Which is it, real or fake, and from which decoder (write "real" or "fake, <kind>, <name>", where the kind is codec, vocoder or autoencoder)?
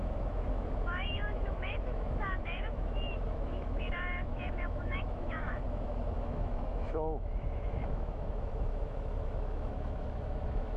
fake, autoencoder, DAC-VAE